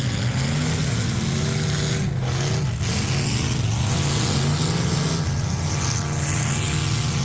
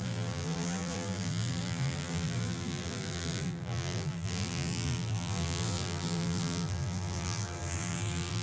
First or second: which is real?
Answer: first